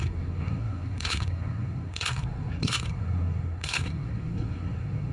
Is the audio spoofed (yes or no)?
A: yes